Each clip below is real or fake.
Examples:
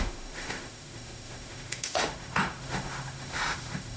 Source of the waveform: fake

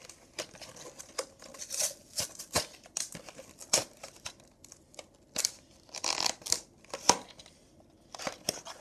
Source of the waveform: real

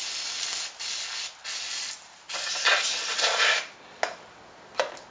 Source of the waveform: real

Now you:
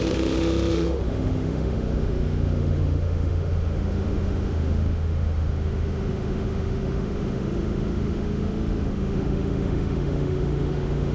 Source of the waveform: fake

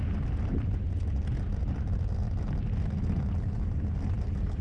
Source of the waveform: real